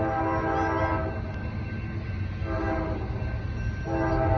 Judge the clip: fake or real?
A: real